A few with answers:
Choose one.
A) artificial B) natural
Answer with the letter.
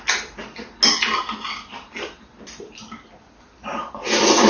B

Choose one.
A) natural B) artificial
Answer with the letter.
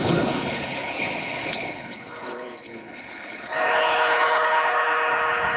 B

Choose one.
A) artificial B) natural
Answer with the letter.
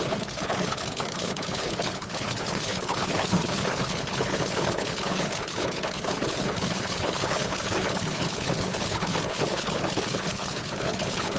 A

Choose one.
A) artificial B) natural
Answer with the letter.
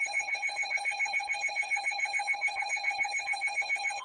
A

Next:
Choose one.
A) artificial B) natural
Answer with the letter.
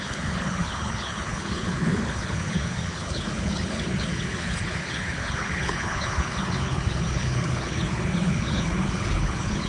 A